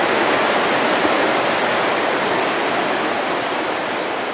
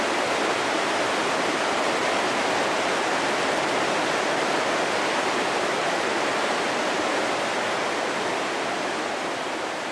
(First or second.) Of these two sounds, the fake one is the first